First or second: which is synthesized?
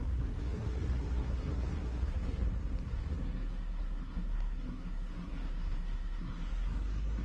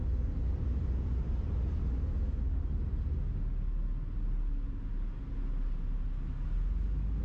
first